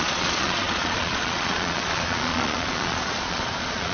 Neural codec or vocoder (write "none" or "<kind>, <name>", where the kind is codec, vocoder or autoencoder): vocoder, Vocos